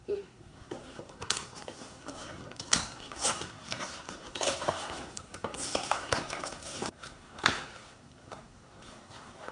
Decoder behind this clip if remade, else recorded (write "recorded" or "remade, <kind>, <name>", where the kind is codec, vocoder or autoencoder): remade, codec, SNAC